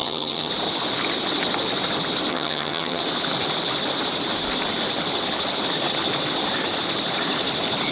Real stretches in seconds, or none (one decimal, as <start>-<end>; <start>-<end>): 0.5-2.3; 3.0-7.9